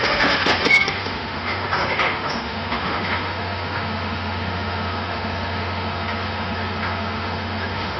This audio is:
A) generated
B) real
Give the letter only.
A